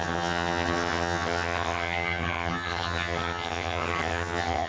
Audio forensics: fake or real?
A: fake